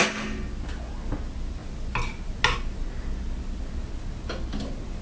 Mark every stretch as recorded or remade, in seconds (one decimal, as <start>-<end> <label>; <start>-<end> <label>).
0.0-5.0 recorded